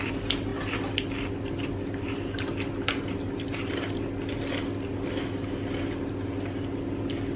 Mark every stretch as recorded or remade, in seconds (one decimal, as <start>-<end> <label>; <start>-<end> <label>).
0.0-7.4 recorded